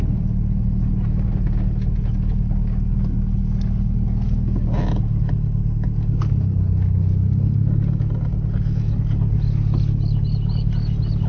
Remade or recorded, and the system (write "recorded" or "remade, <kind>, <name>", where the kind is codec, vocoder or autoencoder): recorded